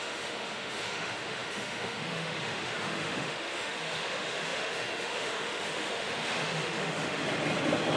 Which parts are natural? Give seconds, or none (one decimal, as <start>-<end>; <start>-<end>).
7.2-8.0